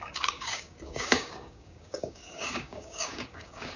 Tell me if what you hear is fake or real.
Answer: fake